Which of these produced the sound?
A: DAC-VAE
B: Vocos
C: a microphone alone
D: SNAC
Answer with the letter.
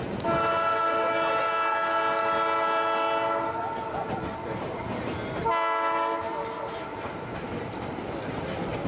C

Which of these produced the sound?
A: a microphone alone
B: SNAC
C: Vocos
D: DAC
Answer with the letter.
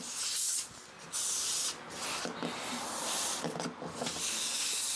A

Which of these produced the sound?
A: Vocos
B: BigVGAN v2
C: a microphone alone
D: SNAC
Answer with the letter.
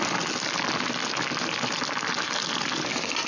C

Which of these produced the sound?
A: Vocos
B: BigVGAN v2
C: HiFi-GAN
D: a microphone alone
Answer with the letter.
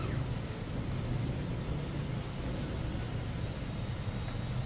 D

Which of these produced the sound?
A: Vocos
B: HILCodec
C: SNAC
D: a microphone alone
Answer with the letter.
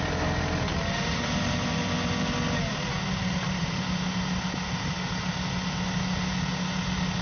D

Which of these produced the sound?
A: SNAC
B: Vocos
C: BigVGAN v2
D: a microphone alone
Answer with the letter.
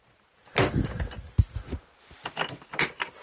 D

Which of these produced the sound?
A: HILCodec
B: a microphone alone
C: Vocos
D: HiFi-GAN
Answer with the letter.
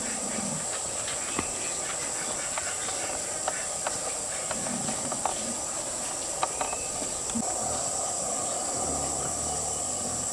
B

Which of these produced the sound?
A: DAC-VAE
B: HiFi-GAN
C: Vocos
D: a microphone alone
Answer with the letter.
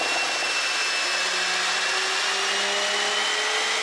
D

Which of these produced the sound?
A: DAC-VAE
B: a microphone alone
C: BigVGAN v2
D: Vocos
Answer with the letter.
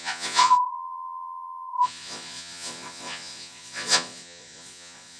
D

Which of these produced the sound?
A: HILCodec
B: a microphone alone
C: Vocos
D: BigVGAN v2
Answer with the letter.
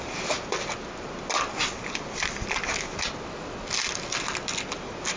B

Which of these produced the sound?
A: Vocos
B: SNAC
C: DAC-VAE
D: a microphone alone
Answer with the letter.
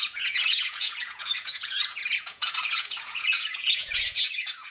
A